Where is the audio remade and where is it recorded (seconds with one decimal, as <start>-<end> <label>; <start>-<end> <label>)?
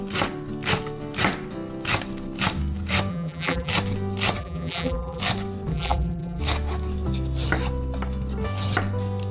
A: 0.0-3.1 recorded; 3.1-3.7 remade; 3.7-4.4 recorded; 4.4-5.2 remade; 5.2-5.7 recorded; 5.7-6.4 remade; 6.4-9.3 recorded